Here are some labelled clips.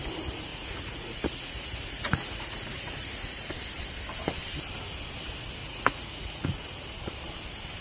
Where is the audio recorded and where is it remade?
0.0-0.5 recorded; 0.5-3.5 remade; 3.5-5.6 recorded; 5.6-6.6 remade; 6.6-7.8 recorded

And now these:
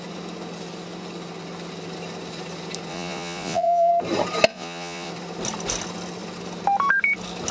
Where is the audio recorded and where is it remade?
0.0-2.9 recorded; 2.9-3.9 remade; 3.9-4.5 recorded; 4.5-5.1 remade; 5.1-7.5 recorded

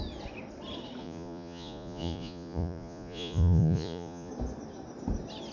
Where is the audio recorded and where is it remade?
0.0-1.0 recorded; 1.0-4.3 remade; 4.3-5.5 recorded

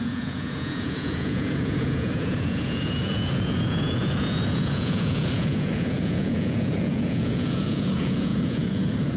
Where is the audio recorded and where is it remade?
0.0-9.2 remade

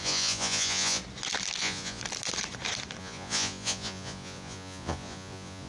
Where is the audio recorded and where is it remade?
0.0-1.0 remade; 1.0-1.6 recorded; 1.6-2.0 remade; 2.0-3.0 recorded; 3.0-5.7 remade

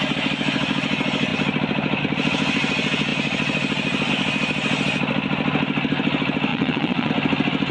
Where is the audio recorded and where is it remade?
0.0-6.5 recorded; 6.5-7.1 remade; 7.1-7.7 recorded

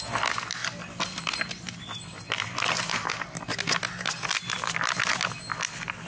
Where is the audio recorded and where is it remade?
0.0-6.1 recorded

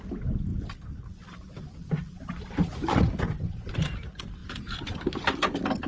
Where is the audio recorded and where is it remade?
0.0-4.4 recorded; 4.4-5.0 remade; 5.0-5.9 recorded